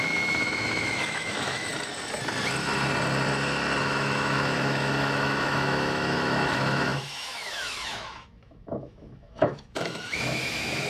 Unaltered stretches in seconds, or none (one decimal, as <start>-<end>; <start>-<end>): 1.7-3.8